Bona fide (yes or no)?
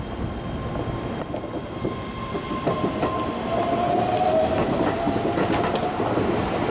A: yes